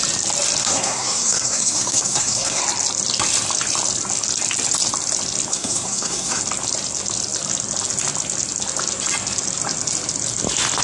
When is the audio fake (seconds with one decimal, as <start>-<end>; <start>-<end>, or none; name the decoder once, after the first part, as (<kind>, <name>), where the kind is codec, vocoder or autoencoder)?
0.6-2.6 (codec, SNAC); 5.5-6.4